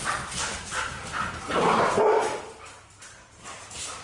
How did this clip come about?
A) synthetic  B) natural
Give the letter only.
B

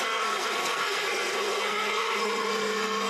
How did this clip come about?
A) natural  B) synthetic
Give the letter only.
B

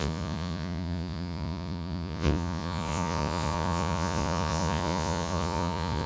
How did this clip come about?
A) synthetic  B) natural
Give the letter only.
A